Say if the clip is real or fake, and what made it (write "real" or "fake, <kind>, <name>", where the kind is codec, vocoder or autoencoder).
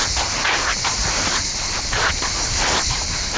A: real